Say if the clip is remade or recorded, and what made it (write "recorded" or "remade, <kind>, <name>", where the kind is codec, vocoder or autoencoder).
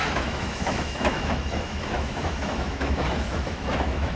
remade, autoencoder, DAC-VAE